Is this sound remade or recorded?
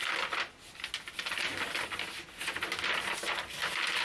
recorded